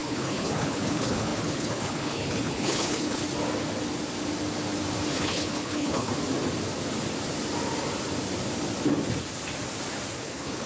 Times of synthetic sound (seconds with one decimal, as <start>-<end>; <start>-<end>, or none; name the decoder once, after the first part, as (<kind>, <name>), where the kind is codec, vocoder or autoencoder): 0.0-3.2 (codec, HILCodec); 5.1-6.1; 10.2-10.7